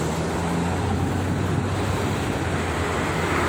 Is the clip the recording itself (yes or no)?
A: yes